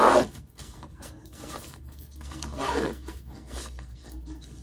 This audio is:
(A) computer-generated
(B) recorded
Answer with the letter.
A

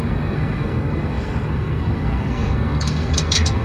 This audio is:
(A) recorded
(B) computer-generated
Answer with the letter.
B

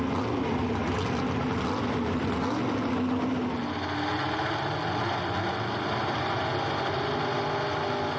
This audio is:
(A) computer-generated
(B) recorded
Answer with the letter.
B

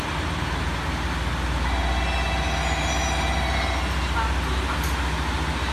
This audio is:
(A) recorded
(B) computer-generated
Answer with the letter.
A